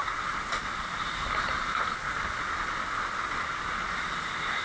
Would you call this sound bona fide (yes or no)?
yes